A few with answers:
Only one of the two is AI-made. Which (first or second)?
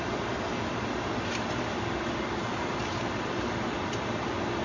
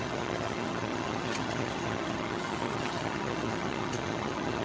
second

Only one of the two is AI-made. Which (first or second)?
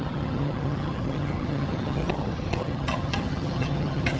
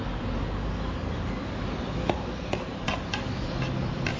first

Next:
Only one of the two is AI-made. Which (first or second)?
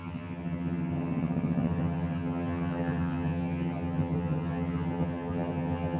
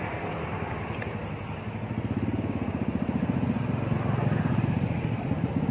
first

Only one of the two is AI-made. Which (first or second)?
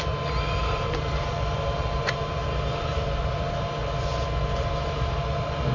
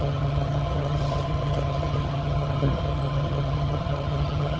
second